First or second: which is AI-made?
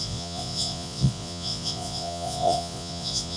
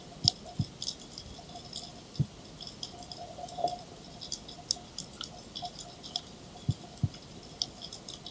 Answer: first